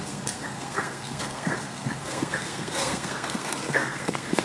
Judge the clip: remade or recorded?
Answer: remade